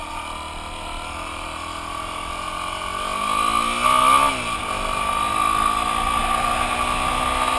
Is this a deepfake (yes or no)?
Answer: no